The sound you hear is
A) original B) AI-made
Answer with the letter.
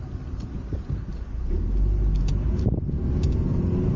A